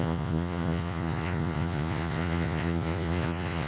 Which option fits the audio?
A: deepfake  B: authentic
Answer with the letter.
A